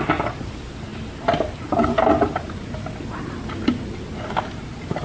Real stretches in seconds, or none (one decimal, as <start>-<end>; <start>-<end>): 0.0-5.0

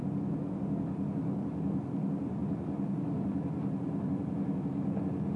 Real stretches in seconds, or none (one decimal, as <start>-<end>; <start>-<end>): 0.0-5.4